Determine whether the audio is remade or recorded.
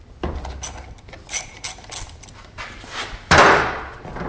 recorded